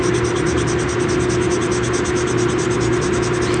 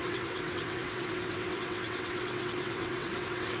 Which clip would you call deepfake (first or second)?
second